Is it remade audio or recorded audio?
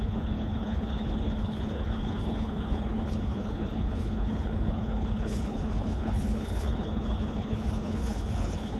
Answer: remade